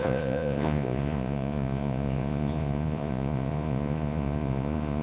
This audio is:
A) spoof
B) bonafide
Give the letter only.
A